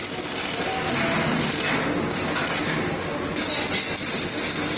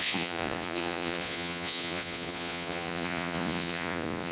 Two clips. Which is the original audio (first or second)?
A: first